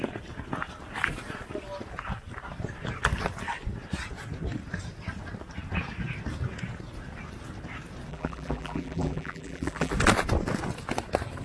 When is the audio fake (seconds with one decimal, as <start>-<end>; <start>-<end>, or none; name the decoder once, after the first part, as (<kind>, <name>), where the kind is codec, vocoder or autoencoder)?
8.1-9.9 (vocoder, BigVGAN v2)